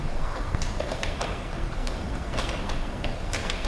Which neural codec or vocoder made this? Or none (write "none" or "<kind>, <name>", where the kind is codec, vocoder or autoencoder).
codec, SNAC